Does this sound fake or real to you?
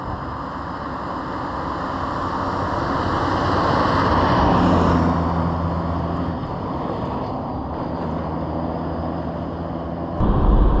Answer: real